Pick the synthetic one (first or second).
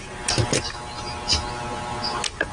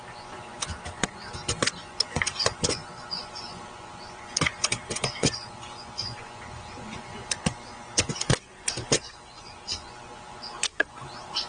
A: second